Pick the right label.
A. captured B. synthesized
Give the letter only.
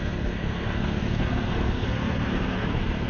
B